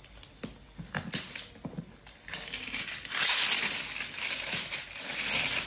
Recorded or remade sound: recorded